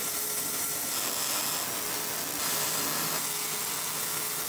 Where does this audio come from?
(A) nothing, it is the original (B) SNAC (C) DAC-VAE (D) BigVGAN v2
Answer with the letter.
A